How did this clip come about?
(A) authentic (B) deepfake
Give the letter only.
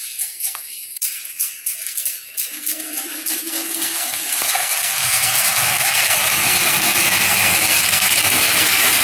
B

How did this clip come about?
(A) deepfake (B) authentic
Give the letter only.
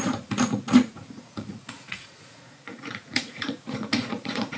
A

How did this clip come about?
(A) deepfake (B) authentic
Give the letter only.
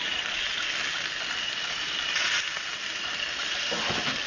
B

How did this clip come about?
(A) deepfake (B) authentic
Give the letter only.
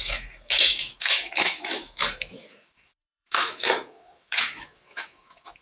A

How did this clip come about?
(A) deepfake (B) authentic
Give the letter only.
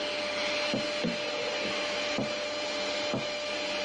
B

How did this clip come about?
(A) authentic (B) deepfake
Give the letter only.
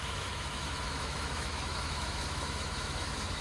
B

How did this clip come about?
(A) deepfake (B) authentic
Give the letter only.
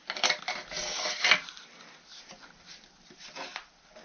B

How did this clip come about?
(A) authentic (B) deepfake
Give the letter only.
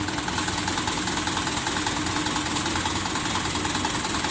A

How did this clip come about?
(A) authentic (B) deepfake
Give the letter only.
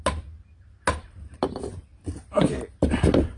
A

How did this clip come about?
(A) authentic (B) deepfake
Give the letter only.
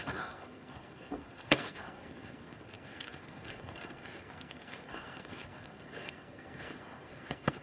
B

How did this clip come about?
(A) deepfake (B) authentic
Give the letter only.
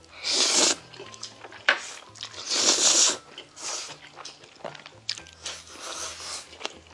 B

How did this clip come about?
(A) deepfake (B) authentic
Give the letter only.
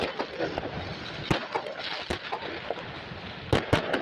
B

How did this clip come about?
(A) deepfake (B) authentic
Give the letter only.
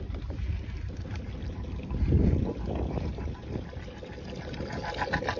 B